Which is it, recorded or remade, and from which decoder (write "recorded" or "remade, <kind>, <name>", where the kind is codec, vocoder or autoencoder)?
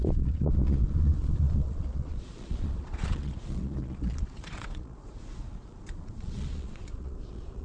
remade, vocoder, Vocos